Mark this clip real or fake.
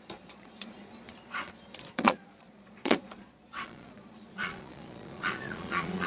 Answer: fake